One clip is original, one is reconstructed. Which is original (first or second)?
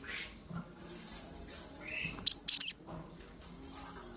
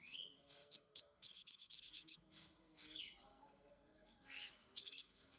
first